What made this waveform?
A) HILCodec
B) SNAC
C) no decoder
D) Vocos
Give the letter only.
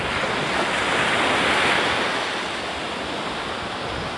C